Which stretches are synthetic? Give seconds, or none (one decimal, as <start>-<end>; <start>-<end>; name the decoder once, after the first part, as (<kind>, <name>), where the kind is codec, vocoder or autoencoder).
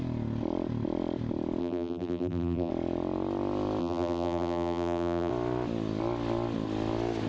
1.6-2.7 (vocoder, BigVGAN v2); 3.8-5.3